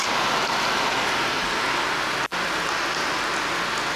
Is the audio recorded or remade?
recorded